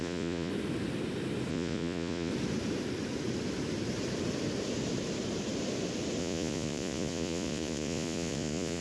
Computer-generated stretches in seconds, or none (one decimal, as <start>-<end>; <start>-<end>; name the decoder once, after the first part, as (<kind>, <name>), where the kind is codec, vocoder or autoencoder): 0.0-0.5 (vocoder, Vocos); 1.5-2.3; 6.2-8.8